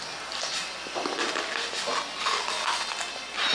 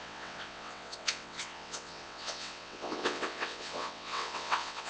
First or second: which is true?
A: first